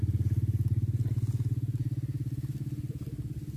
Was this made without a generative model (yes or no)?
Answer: yes